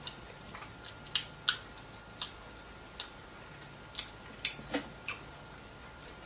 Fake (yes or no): no